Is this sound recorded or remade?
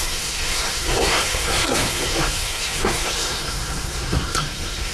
remade